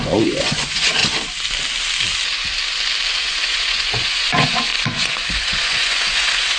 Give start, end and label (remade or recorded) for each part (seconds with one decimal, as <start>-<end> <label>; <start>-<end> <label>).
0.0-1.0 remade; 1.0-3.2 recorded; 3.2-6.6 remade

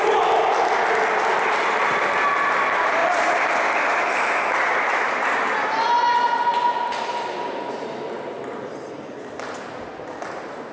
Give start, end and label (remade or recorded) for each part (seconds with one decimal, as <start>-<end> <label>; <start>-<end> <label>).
0.0-10.7 recorded

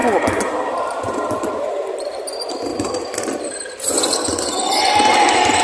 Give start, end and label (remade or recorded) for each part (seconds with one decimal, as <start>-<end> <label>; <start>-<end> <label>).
0.0-2.2 remade; 2.2-2.7 recorded; 2.7-3.3 remade; 3.3-5.6 recorded

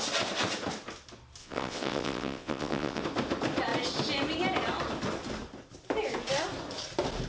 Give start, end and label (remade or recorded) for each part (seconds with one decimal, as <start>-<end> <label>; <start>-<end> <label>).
0.0-1.4 recorded; 1.4-3.0 remade; 3.0-7.3 recorded

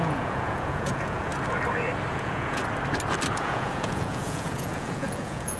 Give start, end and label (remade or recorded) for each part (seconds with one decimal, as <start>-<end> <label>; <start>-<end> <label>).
0.0-1.3 remade; 1.3-2.1 recorded; 2.1-2.6 remade; 2.6-3.3 recorded; 3.3-5.6 remade